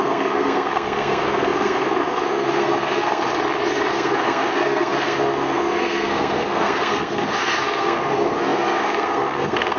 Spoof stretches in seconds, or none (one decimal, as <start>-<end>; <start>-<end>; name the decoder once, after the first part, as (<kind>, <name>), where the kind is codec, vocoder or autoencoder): 0.0-3.3 (codec, SNAC); 3.9-9.8